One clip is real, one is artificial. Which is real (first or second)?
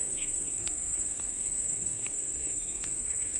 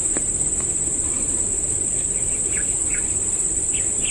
second